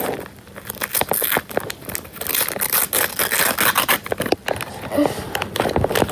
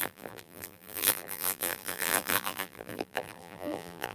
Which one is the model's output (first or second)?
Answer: second